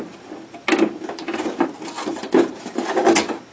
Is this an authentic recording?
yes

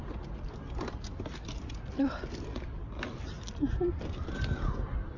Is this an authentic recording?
yes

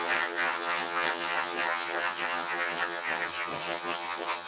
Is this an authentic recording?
no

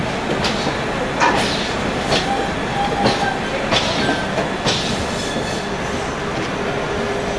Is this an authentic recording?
yes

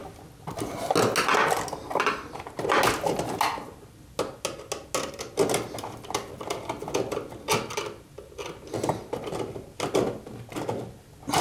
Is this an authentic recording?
yes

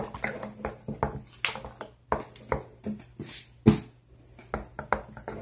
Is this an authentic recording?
yes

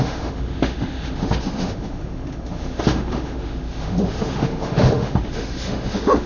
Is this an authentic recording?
no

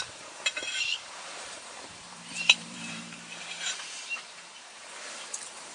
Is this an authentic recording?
no